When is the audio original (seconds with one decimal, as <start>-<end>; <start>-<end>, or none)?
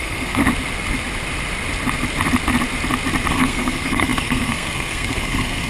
0.4-3.3